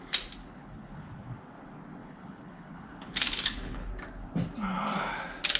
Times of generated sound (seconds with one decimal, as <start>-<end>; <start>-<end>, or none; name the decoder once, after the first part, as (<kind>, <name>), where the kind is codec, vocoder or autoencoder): 0.4-1.2 (codec, HILCodec); 2.0-3.9